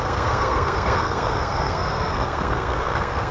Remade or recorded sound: remade